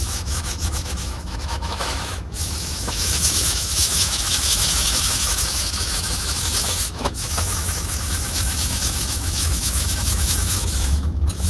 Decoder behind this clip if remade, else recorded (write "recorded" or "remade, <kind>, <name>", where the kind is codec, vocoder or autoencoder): remade, autoencoder, DAC-VAE